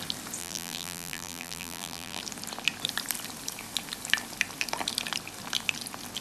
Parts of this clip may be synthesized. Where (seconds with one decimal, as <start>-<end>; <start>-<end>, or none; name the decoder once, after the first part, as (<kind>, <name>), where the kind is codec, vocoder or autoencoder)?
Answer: 0.4-2.2 (vocoder, BigVGAN v2)